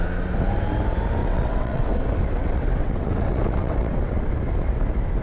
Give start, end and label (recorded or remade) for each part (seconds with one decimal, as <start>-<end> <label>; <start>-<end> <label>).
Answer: 0.0-1.2 recorded; 1.2-4.3 remade; 4.3-5.2 recorded